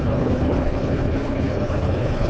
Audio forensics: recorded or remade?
remade